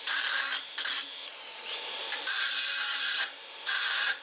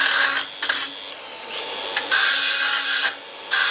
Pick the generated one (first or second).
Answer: first